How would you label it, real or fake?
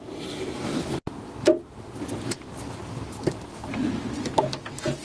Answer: real